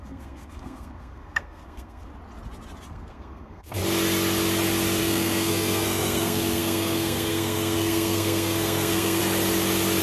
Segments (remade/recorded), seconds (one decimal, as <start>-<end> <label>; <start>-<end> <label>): 0.0-2.1 remade; 2.1-2.9 recorded; 2.9-3.8 remade; 3.8-5.0 recorded; 5.0-9.2 remade; 9.2-10.0 recorded